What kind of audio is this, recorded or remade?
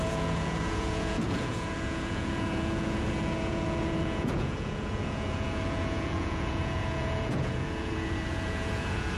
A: remade